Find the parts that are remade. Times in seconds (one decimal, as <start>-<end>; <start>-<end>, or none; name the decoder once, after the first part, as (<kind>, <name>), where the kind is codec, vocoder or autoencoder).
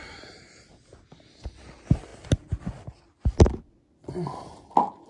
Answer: none